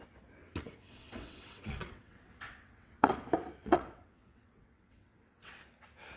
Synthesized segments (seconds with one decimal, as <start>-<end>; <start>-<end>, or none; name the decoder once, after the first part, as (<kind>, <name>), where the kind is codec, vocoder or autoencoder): 0.4-3.1 (vocoder, WaveNeXt); 3.6-5.6